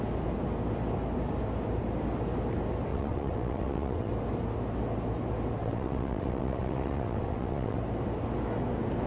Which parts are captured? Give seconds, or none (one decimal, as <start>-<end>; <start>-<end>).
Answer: 0.0-2.9; 4.1-5.6; 7.8-9.1